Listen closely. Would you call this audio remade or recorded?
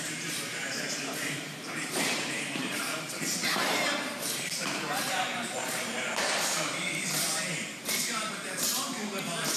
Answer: remade